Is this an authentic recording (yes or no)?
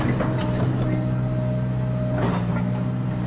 yes